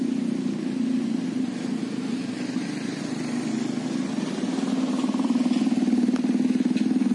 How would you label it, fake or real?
real